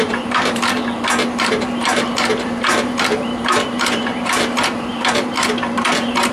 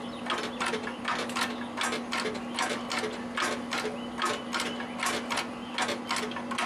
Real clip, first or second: second